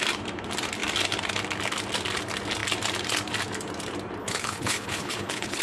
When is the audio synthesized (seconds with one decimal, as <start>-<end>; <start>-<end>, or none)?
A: 4.2-5.6